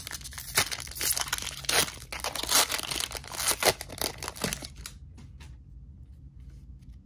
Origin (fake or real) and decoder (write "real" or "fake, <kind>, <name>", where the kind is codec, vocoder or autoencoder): real